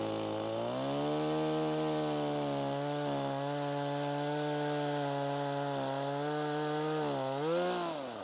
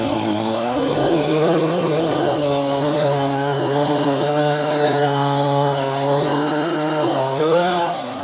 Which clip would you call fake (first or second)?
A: second